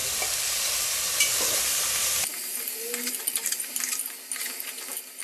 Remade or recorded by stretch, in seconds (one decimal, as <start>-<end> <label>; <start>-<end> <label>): 0.0-5.2 recorded

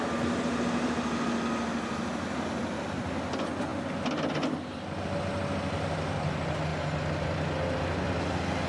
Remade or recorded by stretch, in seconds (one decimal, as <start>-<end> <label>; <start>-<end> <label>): 0.0-8.7 recorded

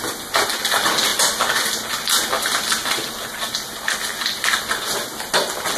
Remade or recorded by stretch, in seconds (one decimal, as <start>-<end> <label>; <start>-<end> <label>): 0.0-5.8 recorded

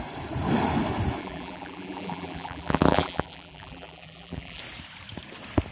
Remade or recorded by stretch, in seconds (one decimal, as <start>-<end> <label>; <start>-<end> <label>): 0.0-1.2 recorded; 1.2-4.6 remade; 4.6-5.7 recorded

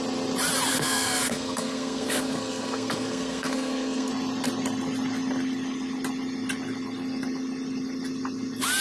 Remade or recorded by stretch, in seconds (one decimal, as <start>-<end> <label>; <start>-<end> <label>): 0.0-0.7 recorded; 0.7-4.1 remade; 4.1-8.8 recorded